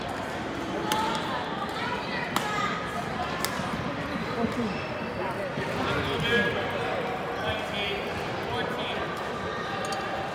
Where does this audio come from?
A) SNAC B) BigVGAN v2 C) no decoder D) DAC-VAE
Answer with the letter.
C